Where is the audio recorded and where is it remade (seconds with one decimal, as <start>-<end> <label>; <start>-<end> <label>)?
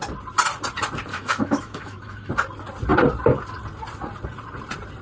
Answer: 0.0-1.1 recorded; 1.1-2.3 remade; 2.3-5.0 recorded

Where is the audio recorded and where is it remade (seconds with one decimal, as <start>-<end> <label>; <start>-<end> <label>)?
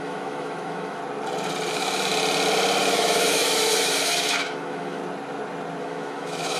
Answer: 0.0-1.0 remade; 1.0-1.7 recorded; 1.7-2.1 remade; 2.1-2.8 recorded; 2.8-5.0 remade; 5.0-5.8 recorded; 5.8-6.6 remade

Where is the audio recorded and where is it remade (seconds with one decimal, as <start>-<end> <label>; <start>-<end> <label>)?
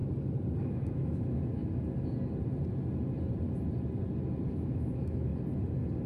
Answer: 0.0-0.6 recorded; 0.6-1.6 remade; 1.6-4.5 recorded; 4.5-5.3 remade; 5.3-6.1 recorded